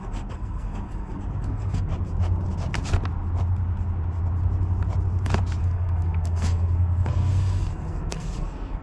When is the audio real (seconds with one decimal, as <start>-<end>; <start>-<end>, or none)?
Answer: 1.9-5.6